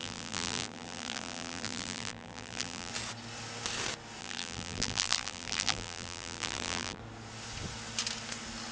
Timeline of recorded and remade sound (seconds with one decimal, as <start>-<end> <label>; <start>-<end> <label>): 0.0-2.9 remade; 2.9-4.2 recorded; 4.2-7.0 remade; 7.0-8.7 recorded